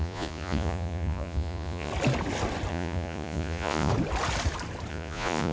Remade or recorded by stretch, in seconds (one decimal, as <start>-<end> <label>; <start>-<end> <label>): 0.0-1.9 remade; 1.9-2.7 recorded; 2.7-3.9 remade; 3.9-4.9 recorded; 4.9-5.5 remade